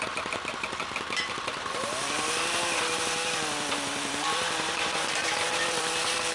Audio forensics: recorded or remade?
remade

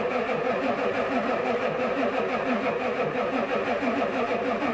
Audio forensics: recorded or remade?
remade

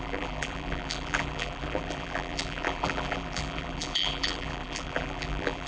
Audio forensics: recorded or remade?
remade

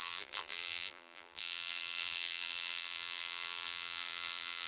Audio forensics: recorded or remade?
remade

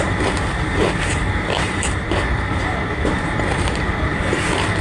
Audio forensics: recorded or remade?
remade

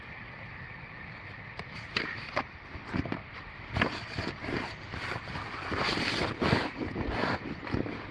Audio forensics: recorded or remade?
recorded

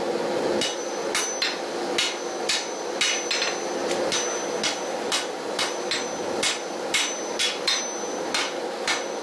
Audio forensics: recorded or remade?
recorded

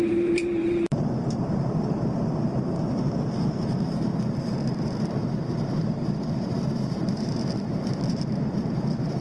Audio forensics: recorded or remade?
remade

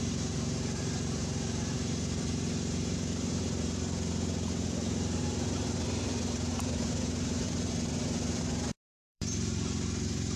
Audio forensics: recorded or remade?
remade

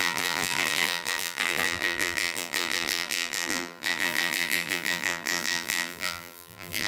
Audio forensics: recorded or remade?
remade